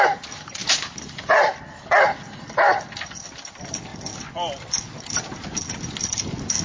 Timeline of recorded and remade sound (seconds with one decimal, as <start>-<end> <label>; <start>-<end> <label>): 0.0-0.6 recorded; 0.6-1.4 remade; 1.4-3.9 recorded; 3.9-5.0 remade; 5.0-6.6 recorded